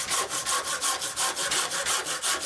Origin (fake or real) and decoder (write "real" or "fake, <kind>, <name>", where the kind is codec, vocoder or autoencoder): real